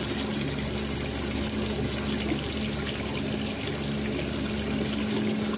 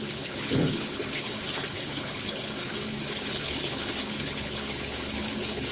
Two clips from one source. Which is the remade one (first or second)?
second